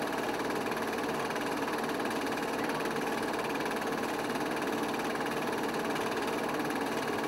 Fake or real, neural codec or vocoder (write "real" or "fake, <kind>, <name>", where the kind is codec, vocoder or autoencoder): real